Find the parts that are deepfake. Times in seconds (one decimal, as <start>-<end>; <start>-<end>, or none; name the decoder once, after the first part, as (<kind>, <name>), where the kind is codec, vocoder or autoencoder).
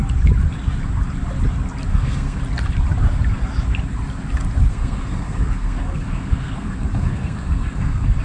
1.9-2.4 (codec, SNAC); 4.7-8.2